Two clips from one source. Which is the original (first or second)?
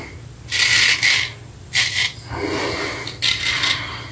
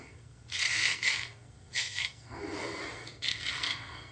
first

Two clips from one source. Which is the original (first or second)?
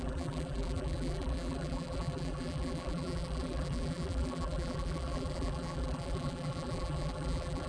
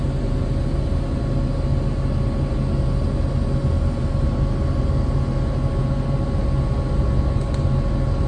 second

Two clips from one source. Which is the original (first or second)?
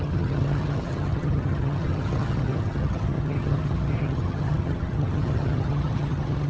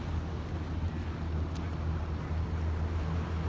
second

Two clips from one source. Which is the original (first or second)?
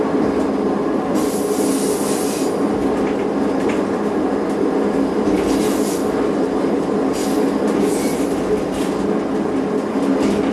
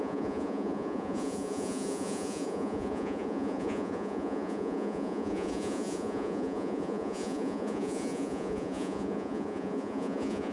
first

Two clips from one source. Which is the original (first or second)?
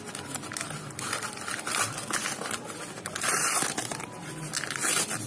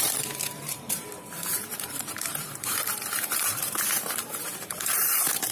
first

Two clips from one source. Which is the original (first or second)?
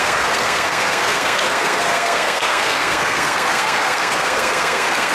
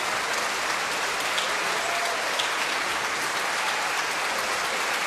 second